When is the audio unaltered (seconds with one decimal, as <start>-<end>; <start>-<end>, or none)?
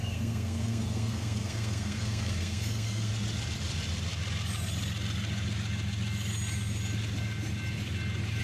3.1-8.4